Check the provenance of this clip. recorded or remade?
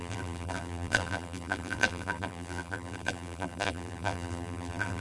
remade